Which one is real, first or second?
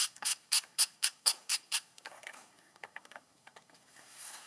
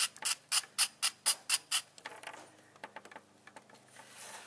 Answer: second